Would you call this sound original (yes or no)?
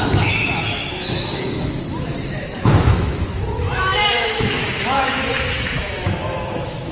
no